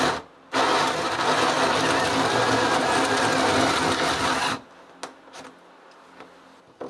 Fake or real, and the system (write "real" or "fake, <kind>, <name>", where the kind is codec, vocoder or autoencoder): real